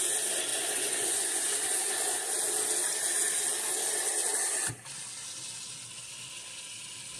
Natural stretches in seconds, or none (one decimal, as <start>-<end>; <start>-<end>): 0.0-0.5; 2.2-7.2